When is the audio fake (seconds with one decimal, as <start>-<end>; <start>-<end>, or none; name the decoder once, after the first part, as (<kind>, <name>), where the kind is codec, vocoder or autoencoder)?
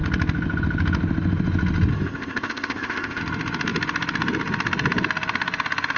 1.9-3.2 (codec, ZipCodec)